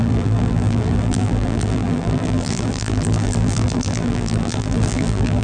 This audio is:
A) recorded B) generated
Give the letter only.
B